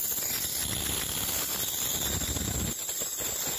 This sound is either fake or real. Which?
real